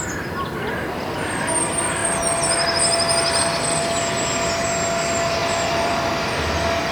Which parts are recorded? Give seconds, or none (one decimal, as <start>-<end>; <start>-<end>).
0.0-5.4; 6.1-6.9